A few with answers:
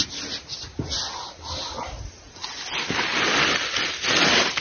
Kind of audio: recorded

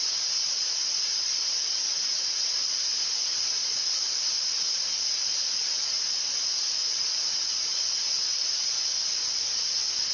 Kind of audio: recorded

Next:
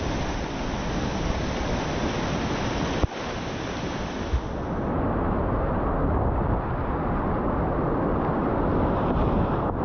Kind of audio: recorded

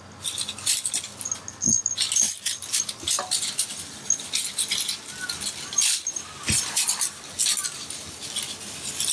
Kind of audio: recorded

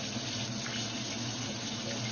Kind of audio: recorded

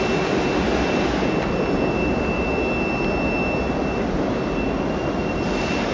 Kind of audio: recorded